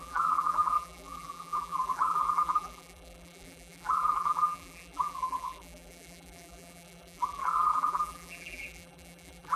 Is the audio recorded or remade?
remade